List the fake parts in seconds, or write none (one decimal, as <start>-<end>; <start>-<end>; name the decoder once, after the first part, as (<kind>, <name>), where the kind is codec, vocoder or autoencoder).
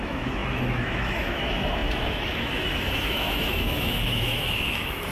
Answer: 0.0-5.1 (autoencoder, DAC-VAE)